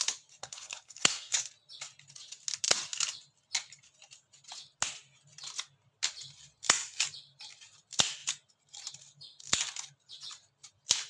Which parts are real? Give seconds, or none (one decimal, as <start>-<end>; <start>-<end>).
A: 0.0-0.4; 1.4-11.1